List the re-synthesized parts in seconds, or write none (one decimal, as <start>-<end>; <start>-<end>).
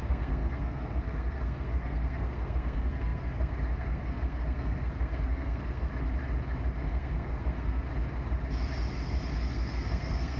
0.0-5.9; 6.9-7.9; 9.5-10.4